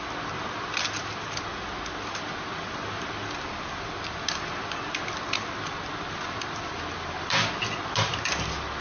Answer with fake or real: real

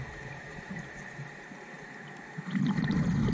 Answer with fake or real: fake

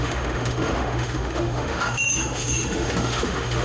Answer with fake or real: fake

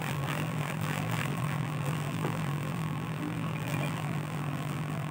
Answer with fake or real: fake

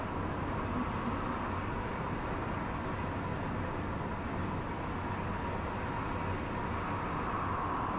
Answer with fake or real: real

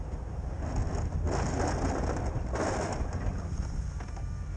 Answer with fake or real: real